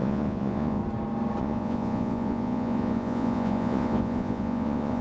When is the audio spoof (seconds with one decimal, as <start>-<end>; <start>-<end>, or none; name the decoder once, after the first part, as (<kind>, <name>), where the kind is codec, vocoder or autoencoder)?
0.0-0.8 (vocoder, Vocos); 1.4-5.0

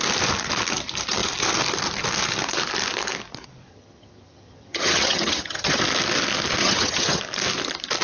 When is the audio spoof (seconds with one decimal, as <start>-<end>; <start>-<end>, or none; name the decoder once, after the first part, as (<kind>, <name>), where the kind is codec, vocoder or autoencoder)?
3.7-5.8 (vocoder, HiFi-GAN); 6.6-7.2

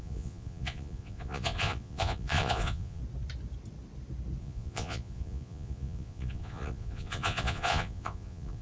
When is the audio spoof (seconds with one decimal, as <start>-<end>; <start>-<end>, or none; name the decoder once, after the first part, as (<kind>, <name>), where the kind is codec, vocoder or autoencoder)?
0.0-3.0 (vocoder, Vocos); 4.4-8.6